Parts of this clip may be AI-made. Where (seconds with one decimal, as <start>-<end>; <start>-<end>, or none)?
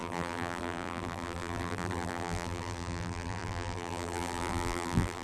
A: 0.0-5.2